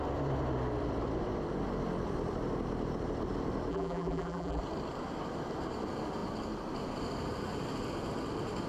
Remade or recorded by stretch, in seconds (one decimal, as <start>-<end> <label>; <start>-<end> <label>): 0.0-3.7 recorded; 3.7-4.6 remade; 4.6-8.7 recorded